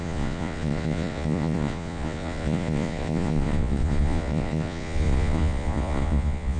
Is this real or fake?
fake